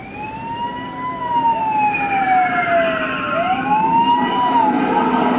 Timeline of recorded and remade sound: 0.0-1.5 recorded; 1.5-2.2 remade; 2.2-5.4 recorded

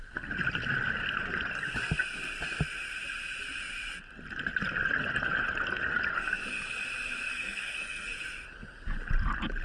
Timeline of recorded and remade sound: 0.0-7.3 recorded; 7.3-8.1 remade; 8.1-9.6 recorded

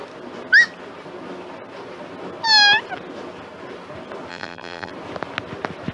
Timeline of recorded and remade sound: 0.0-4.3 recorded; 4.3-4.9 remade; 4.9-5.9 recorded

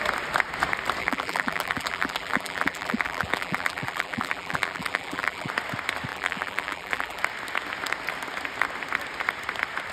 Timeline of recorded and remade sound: 0.0-1.0 recorded; 1.0-5.5 remade; 5.5-6.1 recorded; 6.1-7.2 remade; 7.2-9.9 recorded